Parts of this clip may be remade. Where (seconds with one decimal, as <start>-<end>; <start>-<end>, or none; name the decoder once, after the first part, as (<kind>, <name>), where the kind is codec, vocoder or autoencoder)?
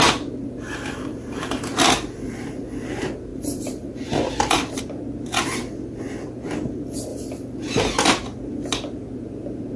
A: 1.1-1.6 (vocoder, BigVGAN v2); 3.3-4.8